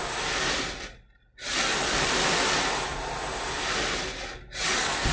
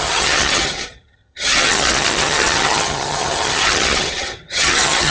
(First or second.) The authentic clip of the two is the first